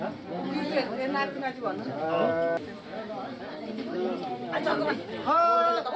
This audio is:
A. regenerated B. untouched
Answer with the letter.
B